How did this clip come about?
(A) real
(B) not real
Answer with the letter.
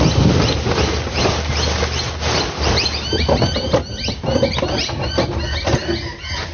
A